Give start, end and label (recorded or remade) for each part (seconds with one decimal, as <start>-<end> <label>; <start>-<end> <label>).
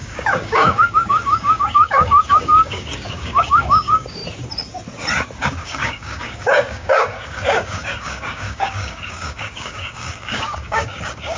0.0-4.2 remade; 4.2-5.4 recorded; 5.4-11.4 remade